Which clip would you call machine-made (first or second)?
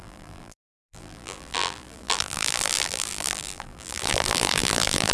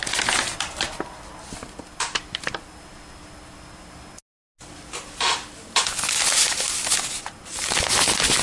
first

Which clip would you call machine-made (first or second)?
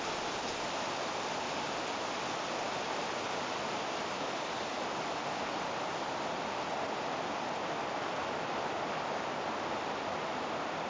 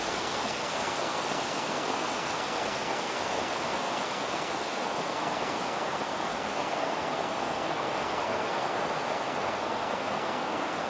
second